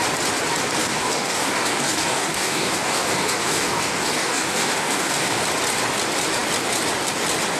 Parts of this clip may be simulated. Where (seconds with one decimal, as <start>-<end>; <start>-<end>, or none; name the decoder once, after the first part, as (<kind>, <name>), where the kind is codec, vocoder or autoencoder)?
0.8-5.4 (codec, DAC)